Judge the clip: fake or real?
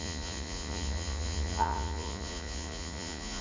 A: fake